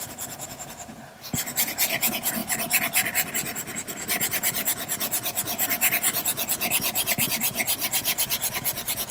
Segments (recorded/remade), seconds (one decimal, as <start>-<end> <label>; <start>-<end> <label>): 0.0-2.4 remade; 2.4-3.3 recorded; 3.3-9.1 remade